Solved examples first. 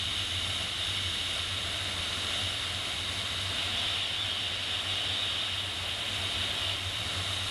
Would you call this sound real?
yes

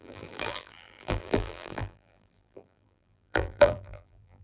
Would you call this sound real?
no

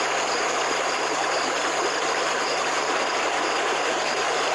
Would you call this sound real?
no